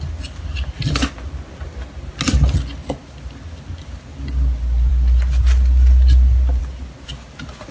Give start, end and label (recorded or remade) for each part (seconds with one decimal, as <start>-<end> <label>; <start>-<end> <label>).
0.0-7.7 recorded